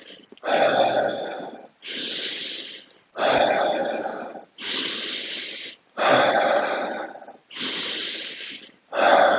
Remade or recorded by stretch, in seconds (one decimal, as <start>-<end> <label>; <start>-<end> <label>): 0.0-9.4 recorded